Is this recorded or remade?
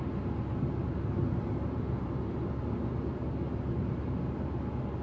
recorded